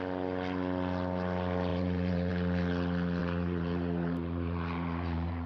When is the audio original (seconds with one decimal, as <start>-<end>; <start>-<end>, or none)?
0.0-1.7; 2.3-3.2